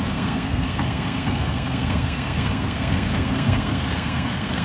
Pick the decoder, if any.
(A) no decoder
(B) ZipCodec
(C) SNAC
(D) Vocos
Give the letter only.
C